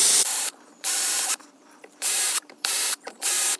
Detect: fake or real fake